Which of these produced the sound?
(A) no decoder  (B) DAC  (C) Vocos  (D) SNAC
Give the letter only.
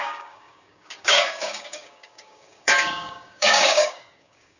B